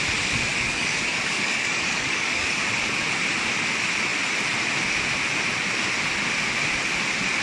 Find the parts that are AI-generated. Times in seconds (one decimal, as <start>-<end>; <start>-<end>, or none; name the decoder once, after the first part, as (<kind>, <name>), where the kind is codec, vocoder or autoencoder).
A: 0.5-2.6 (codec, DAC)